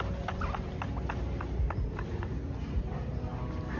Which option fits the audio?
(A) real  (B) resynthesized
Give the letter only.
A